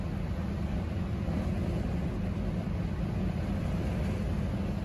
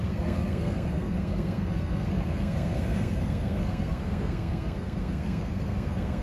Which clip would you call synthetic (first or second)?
second